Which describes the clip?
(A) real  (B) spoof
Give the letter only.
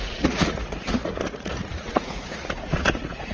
B